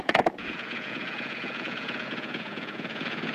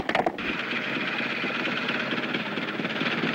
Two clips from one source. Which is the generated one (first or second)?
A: first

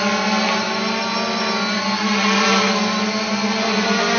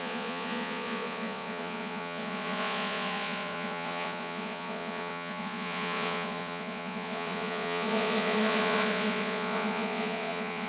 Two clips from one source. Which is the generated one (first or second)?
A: second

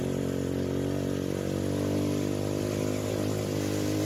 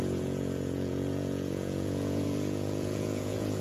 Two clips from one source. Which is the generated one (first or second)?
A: second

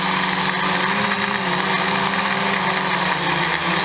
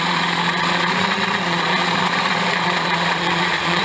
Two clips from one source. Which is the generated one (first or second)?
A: second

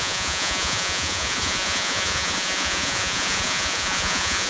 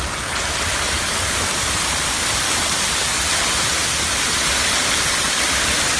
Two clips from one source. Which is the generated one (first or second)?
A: first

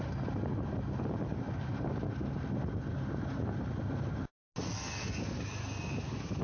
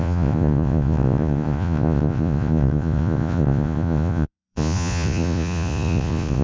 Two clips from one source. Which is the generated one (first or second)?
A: second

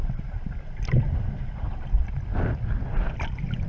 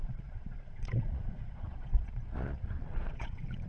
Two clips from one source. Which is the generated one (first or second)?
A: second